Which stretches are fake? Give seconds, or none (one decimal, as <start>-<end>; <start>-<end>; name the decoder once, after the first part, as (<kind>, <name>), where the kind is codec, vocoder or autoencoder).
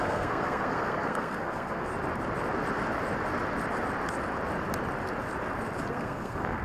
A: 0.0-1.9 (codec, SNAC); 5.9-6.6